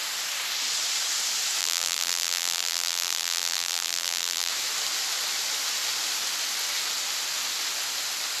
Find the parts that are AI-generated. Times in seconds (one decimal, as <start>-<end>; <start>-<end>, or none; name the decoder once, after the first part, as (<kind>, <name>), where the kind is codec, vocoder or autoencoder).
1.6-4.5 (vocoder, BigVGAN v2)